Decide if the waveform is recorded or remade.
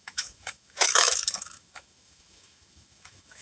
remade